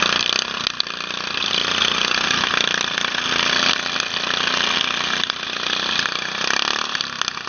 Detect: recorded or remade recorded